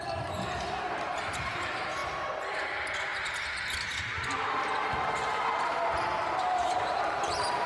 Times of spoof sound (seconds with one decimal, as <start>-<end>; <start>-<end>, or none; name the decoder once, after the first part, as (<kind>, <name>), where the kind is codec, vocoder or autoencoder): 0.0-3.1 (vocoder, BigVGAN v2); 6.4-7.7